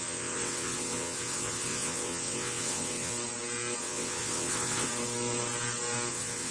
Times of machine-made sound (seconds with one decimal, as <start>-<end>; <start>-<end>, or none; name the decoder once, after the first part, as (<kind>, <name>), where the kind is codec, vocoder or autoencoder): 0.0-3.1 (vocoder, WaveNeXt); 3.8-4.9; 6.1-6.5